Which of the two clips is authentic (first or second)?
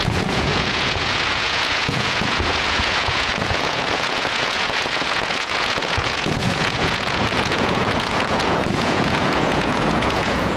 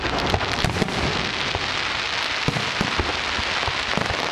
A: second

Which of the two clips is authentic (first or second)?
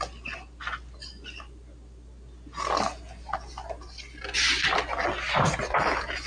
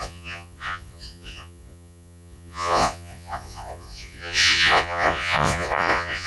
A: first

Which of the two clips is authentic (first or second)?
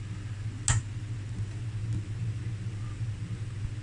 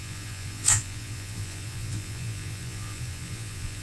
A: first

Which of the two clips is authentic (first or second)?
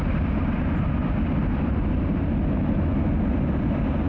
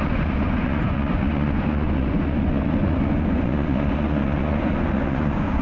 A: first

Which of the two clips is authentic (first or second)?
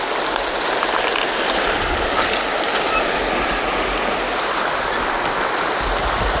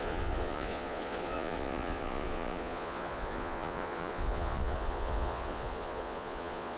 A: first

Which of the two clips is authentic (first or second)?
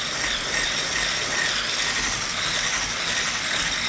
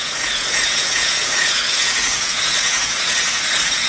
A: first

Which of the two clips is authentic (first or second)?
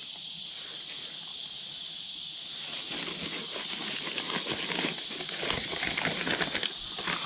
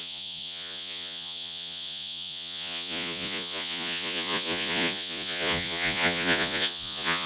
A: first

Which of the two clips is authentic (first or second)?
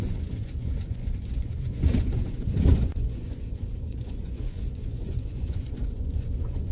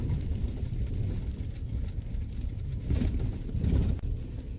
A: second